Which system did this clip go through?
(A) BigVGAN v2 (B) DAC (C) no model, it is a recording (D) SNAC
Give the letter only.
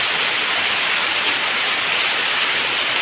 C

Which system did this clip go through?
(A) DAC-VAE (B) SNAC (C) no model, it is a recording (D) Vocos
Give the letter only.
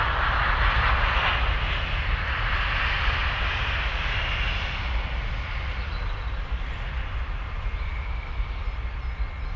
C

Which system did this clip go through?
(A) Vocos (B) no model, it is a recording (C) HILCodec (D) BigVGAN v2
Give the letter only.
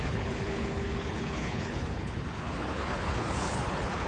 C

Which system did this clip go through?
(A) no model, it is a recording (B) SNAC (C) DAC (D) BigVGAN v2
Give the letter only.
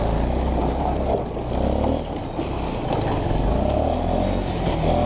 A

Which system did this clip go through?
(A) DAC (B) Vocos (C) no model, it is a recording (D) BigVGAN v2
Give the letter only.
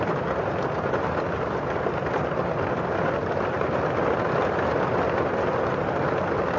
C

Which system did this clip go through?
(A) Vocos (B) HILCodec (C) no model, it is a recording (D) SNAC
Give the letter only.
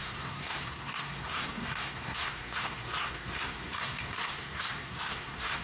D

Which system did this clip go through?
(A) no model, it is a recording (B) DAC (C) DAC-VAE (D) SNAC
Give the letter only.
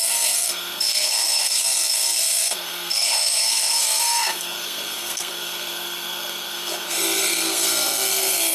D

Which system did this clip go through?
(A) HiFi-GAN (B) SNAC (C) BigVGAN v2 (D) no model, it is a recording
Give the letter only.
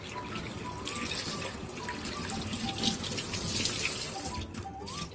D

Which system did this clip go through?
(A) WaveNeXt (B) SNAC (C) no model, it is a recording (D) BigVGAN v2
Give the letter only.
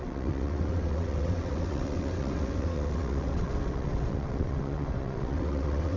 A